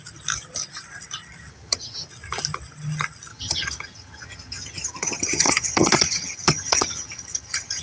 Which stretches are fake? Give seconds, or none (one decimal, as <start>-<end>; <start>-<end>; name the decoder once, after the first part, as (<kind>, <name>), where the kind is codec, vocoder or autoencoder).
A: 1.5-2.1 (vocoder, HiFi-GAN); 3.3-7.8